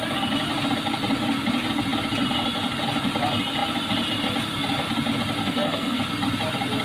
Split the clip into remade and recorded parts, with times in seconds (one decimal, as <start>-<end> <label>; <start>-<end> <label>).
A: 0.0-5.4 recorded; 5.4-6.0 remade; 6.0-6.8 recorded